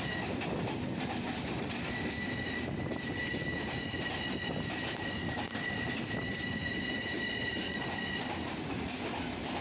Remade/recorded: recorded